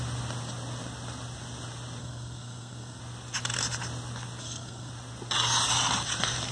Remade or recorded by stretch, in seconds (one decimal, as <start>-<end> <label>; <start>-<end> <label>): 0.0-2.0 recorded; 2.0-3.0 remade; 3.0-4.4 recorded; 4.4-4.9 remade; 4.9-6.5 recorded